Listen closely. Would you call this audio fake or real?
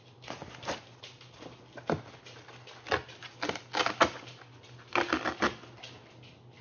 real